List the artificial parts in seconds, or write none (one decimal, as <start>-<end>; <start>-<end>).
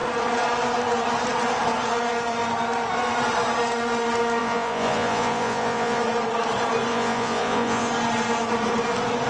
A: 4.4-6.0; 6.9-7.9